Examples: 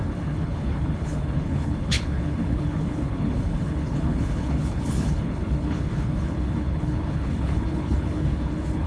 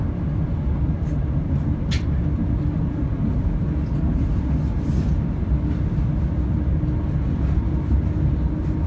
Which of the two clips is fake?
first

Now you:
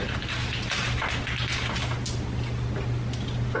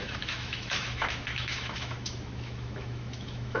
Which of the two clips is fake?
second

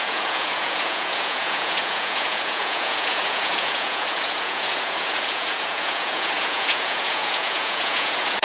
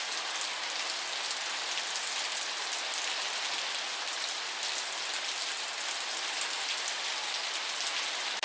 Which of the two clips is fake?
first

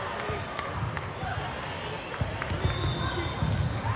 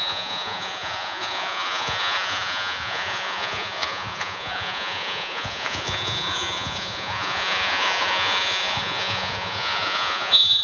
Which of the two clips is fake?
second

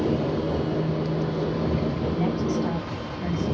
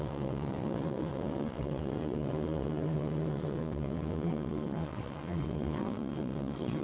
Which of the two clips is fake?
second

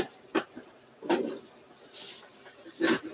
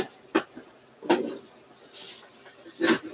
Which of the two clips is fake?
first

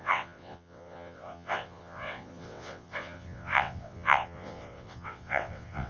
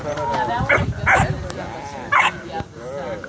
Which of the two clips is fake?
first